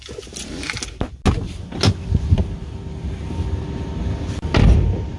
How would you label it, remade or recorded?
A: recorded